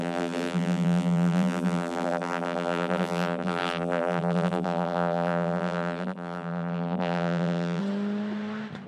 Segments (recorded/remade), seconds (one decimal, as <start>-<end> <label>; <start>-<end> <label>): 0.0-7.8 remade; 7.8-8.9 recorded